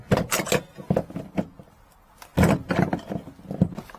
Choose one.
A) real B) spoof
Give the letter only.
A